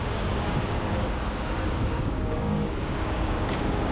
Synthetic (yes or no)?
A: yes